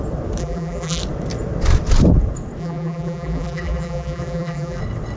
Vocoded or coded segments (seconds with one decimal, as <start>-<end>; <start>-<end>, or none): 0.4-1.0; 2.6-4.8